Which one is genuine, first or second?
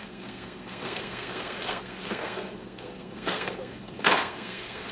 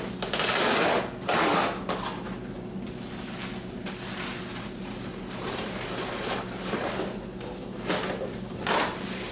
second